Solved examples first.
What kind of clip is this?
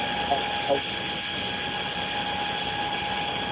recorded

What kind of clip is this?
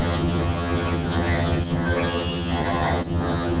remade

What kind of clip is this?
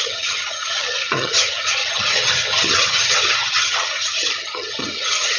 remade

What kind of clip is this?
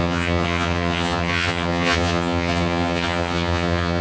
remade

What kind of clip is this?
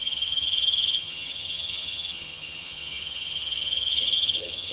remade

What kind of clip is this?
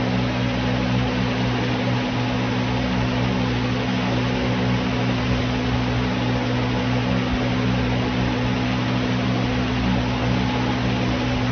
recorded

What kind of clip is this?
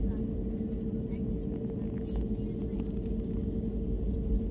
recorded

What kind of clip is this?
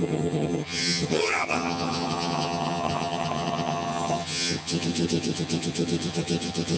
remade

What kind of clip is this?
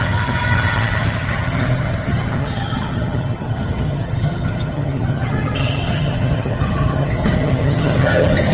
remade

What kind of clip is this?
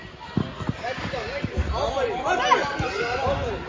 recorded